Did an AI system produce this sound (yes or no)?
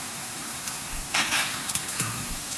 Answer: yes